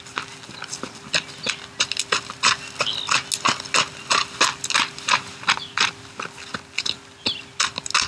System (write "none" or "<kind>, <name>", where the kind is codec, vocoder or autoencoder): none